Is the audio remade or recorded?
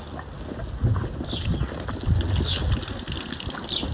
recorded